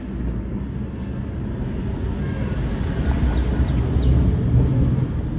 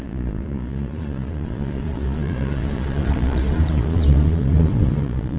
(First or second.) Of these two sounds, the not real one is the second